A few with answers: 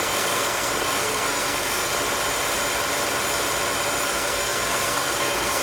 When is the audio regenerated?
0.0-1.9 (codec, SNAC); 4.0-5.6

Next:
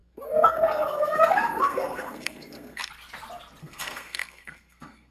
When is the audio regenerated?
0.0-2.9 (codec, SNAC); 3.6-5.1

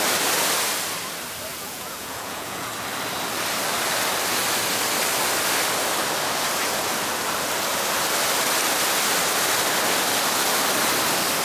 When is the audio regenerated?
1.5-2.7 (vocoder, Vocos)